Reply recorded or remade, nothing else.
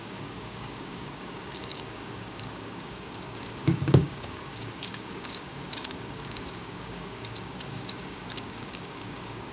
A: remade